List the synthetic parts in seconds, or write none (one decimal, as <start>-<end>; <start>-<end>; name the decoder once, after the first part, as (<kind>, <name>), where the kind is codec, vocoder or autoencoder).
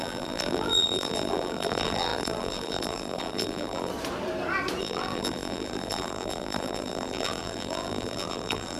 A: 0.0-3.9 (vocoder, BigVGAN v2); 4.8-8.8